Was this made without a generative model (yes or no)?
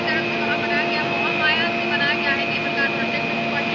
yes